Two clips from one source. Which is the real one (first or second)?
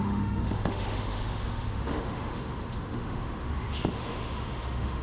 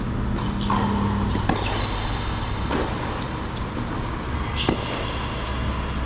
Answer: second